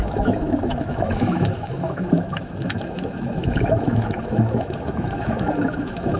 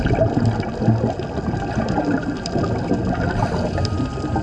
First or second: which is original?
second